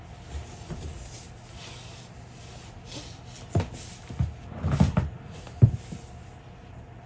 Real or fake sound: real